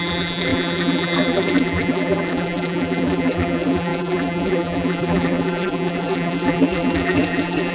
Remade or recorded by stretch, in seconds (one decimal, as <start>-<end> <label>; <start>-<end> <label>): 0.0-7.7 remade